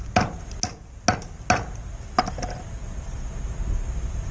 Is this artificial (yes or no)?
no